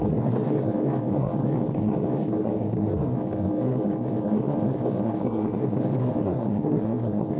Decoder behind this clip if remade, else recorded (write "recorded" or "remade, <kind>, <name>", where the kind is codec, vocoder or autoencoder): remade, codec, SNAC